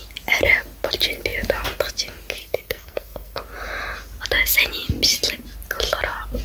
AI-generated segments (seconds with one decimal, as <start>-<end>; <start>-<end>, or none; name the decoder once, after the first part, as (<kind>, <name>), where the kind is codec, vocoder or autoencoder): 2.4-3.4 (codec, SNAC)

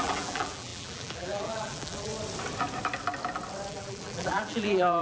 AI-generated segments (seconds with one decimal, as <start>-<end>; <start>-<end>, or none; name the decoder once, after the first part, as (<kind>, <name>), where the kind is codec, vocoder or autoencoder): 0.0-2.1 (vocoder, BigVGAN v2); 3.7-5.0